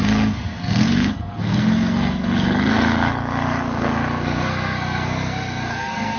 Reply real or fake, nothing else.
fake